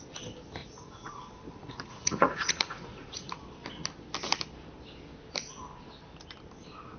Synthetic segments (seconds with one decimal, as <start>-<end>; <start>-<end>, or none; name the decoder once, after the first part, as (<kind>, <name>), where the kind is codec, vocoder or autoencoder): 0.6-1.2 (vocoder, Vocos); 1.6-3.4